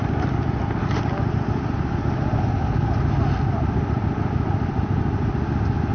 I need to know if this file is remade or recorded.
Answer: recorded